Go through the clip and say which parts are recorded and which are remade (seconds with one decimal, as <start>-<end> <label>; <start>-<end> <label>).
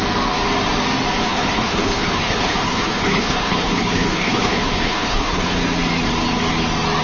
0.0-1.3 recorded; 1.3-5.5 remade; 5.5-7.0 recorded